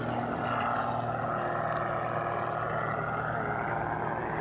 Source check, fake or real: real